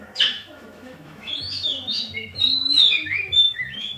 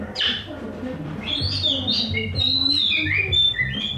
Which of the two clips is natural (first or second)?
second